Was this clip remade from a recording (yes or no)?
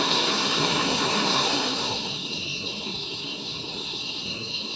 yes